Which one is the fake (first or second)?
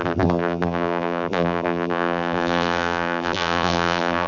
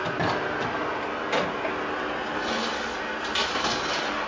first